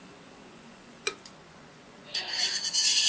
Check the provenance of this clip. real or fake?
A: fake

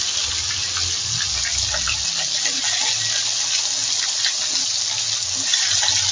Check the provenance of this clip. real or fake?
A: real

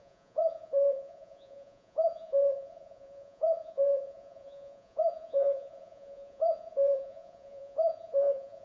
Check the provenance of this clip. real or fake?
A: fake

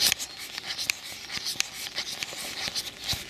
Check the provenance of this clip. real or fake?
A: real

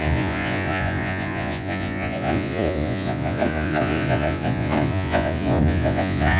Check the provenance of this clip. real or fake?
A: fake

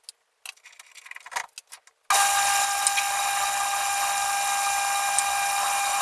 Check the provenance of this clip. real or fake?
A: real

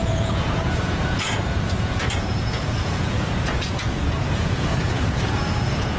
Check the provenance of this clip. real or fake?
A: fake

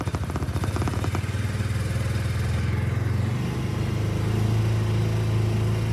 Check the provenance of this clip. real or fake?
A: real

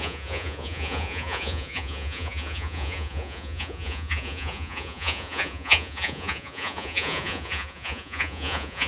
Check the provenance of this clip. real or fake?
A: fake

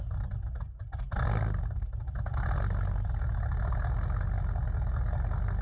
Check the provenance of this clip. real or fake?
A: real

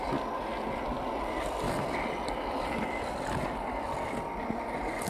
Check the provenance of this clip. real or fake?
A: real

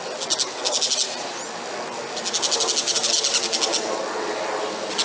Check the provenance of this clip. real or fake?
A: real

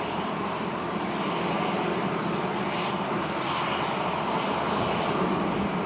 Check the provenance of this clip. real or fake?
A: real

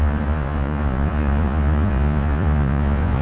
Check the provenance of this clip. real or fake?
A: fake